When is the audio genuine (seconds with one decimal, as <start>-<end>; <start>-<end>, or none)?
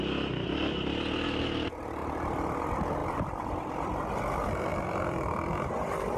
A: 0.0-2.0; 2.6-3.0; 4.2-4.7; 5.7-6.2